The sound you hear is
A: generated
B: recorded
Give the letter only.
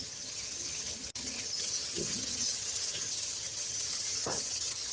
A